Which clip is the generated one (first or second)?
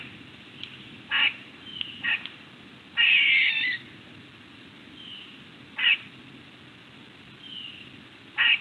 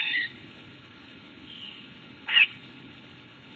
second